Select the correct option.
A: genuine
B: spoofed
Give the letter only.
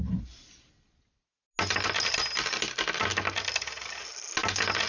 A